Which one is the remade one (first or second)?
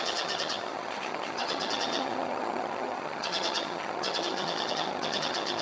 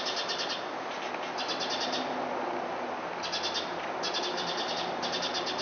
first